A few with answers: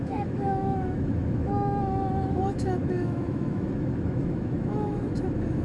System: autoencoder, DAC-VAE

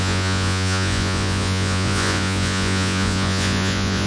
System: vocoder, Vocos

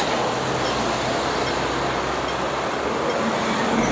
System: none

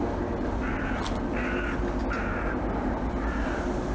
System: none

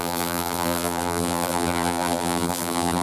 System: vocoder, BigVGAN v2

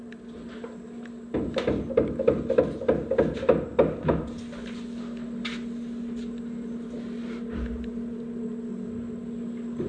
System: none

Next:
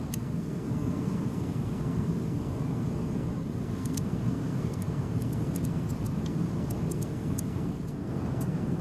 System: codec, SNAC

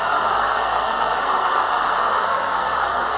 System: codec, SNAC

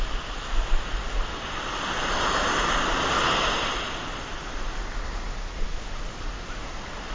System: none